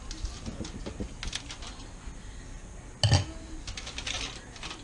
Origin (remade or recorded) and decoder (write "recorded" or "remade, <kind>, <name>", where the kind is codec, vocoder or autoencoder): recorded